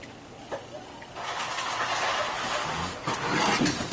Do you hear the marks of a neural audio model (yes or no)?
no